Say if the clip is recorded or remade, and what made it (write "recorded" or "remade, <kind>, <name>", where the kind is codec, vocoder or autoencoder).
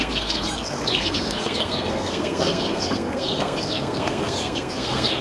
remade, codec, SNAC